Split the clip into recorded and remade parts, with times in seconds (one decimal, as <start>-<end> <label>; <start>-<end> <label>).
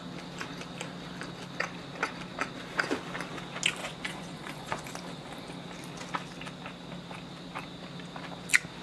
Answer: 0.0-3.8 recorded; 3.8-4.9 remade; 4.9-8.8 recorded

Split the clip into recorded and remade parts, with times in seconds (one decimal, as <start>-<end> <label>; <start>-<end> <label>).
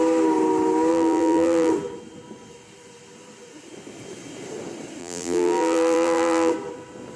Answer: 0.0-0.9 recorded; 0.9-1.7 remade; 1.7-5.0 recorded; 5.0-6.5 remade; 6.5-7.2 recorded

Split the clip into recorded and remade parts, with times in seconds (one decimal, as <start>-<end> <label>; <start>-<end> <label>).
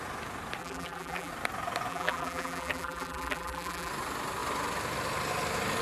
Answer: 0.0-0.6 recorded; 0.6-1.3 remade; 1.3-1.9 recorded; 1.9-3.9 remade; 3.9-5.8 recorded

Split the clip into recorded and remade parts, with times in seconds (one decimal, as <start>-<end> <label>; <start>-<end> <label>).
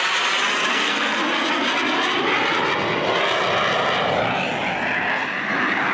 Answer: 0.0-0.7 recorded; 0.7-1.2 remade; 1.2-5.9 recorded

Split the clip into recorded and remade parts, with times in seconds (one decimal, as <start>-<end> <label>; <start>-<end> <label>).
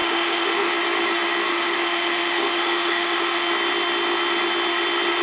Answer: 0.0-0.7 remade; 0.7-1.5 recorded; 1.5-3.5 remade; 3.5-5.2 recorded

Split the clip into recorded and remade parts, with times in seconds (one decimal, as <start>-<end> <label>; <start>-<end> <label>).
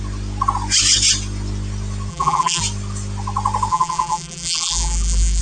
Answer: 0.0-2.1 recorded; 2.1-2.6 remade; 2.6-3.7 recorded; 3.7-5.4 remade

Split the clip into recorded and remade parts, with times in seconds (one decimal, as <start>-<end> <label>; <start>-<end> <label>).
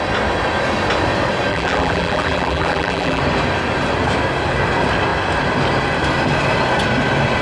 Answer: 0.0-1.5 recorded; 1.5-3.2 remade; 3.2-7.4 recorded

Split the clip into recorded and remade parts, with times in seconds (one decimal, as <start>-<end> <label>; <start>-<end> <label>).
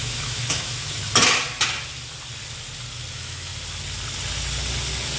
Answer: 0.0-1.0 remade; 1.0-3.1 recorded; 3.1-3.5 remade; 3.5-5.2 recorded